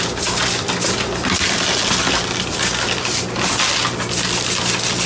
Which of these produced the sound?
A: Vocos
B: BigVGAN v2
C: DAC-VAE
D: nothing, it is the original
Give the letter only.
D